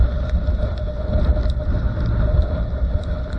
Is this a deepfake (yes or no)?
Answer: no